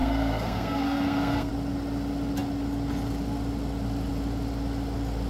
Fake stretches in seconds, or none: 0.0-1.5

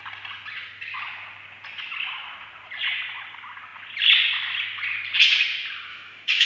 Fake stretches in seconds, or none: 5.9-6.5

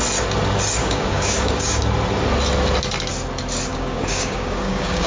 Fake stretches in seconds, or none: 0.8-1.8; 3.7-5.1

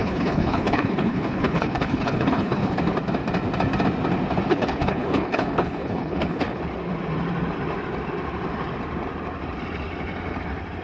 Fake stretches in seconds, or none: 0.0-2.8; 4.5-6.6

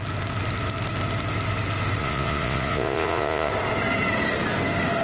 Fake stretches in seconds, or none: 2.0-3.5